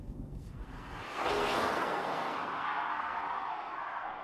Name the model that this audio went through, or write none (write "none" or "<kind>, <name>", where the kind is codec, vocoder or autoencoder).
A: codec, SNAC